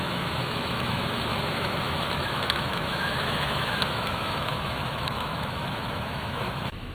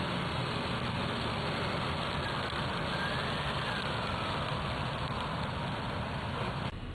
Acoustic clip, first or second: second